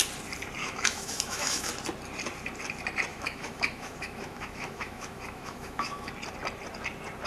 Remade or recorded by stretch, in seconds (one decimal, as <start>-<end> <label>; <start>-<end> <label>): 0.0-0.6 recorded; 0.6-1.7 remade; 1.7-3.1 recorded; 3.1-6.1 remade; 6.1-7.3 recorded